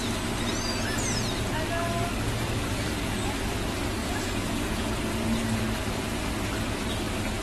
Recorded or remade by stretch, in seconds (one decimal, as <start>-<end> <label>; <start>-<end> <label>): 0.0-4.0 recorded; 4.0-4.9 remade; 4.9-7.4 recorded